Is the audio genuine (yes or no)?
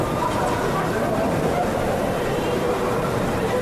yes